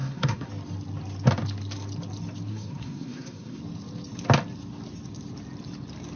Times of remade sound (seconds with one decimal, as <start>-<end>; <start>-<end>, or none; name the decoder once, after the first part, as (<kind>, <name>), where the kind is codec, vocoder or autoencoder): 0.0-0.5 (codec, SNAC); 2.5-3.6